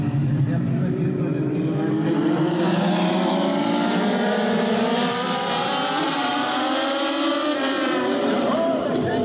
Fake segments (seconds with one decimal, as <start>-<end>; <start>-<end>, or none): 0.0-6.3; 7.3-9.2